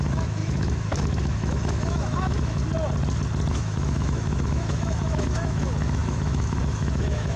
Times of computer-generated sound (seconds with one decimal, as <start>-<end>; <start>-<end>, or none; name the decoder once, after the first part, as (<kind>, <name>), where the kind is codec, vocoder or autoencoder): 0.0-2.6 (autoencoder, DAC-VAE); 3.5-7.4